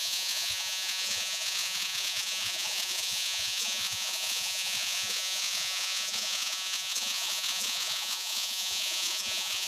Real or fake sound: fake